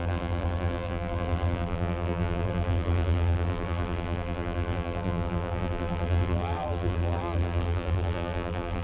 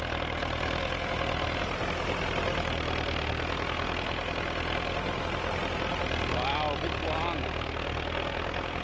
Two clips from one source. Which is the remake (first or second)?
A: first